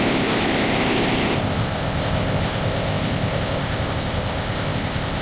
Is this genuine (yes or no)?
no